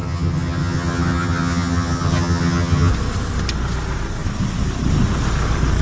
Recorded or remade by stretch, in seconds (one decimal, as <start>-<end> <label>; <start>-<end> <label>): 0.0-2.9 remade; 2.9-5.8 recorded